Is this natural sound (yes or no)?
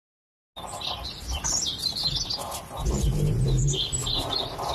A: yes